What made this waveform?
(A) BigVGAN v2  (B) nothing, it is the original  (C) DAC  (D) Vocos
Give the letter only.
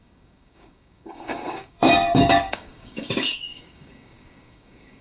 C